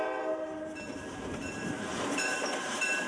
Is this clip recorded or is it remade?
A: remade